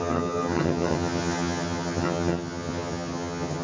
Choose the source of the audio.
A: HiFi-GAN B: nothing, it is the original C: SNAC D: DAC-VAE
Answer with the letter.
A